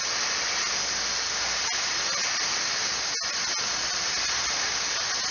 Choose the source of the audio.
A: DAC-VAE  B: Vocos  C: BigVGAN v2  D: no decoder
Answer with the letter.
D